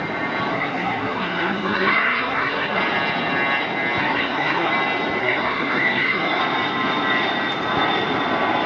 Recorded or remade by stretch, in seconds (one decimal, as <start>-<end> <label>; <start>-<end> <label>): 0.0-0.5 recorded; 0.5-2.8 remade; 2.8-4.0 recorded; 4.0-4.7 remade; 4.7-5.2 recorded; 5.2-6.4 remade; 6.4-8.7 recorded